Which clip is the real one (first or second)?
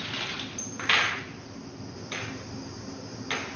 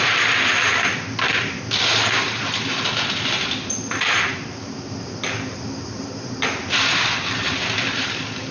first